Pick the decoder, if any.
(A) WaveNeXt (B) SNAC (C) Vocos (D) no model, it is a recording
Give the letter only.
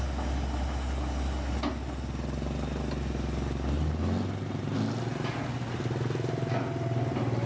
D